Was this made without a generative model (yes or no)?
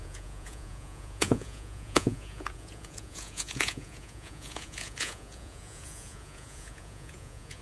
no